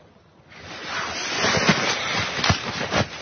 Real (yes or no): yes